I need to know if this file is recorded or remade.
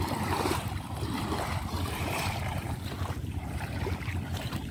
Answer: remade